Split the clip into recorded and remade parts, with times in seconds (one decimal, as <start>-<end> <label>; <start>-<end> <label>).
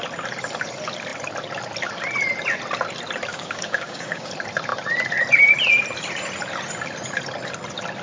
0.0-3.3 recorded; 3.3-4.3 remade; 4.3-8.0 recorded